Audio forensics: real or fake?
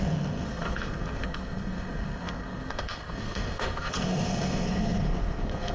fake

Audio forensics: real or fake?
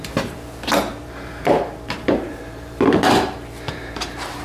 fake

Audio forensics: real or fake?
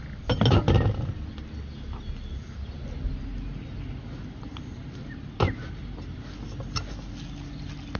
real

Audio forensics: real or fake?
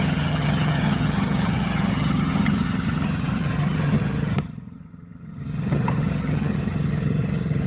fake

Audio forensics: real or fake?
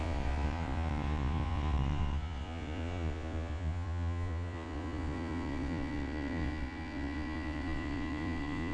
fake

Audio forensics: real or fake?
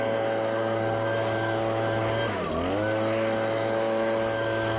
real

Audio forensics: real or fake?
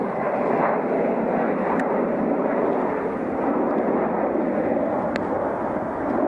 real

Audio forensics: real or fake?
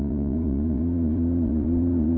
fake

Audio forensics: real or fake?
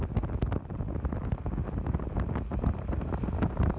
real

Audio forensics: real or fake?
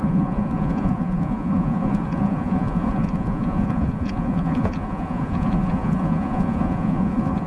fake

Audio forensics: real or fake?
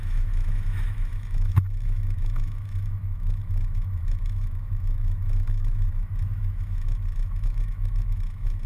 fake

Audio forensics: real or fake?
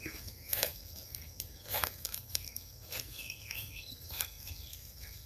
fake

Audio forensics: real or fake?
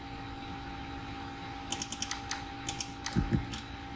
real